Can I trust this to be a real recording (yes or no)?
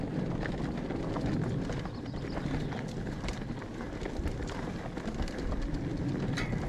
yes